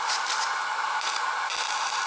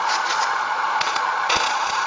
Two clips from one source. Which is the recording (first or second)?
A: first